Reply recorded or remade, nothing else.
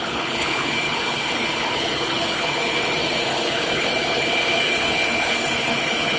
remade